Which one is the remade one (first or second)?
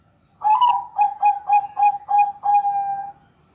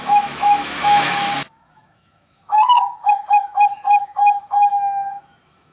second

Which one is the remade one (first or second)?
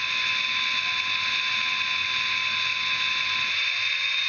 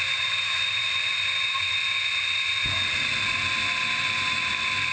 second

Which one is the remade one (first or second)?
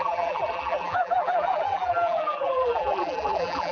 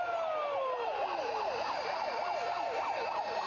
first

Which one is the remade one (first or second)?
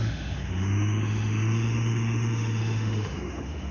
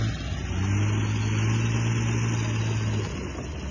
first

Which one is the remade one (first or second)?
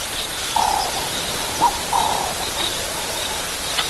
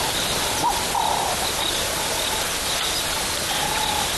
first